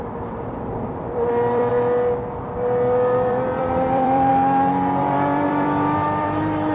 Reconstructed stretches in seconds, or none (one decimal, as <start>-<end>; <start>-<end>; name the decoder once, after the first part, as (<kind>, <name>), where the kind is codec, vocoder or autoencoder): 0.0-1.7 (vocoder, BigVGAN v2); 3.3-4.3; 5.0-6.7